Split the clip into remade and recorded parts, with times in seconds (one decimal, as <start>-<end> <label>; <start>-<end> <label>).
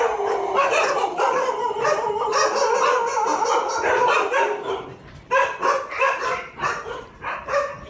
0.0-2.3 remade; 2.3-7.0 recorded; 7.0-7.9 remade